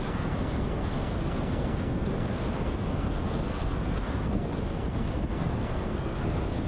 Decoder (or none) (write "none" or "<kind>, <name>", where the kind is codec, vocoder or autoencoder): codec, SNAC